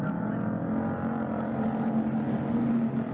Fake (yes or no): no